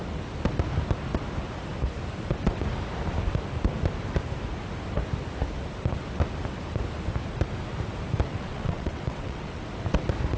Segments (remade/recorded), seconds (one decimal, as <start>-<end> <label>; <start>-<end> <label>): 0.0-8.3 recorded; 8.3-9.6 remade; 9.6-10.4 recorded